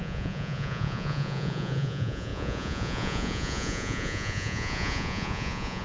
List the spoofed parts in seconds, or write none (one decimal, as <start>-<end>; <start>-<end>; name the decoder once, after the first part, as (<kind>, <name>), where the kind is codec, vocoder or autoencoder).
0.0-5.8 (vocoder, Vocos)